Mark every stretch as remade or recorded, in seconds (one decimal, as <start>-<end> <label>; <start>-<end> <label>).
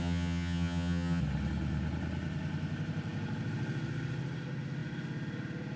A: 0.0-1.2 remade; 1.2-5.8 recorded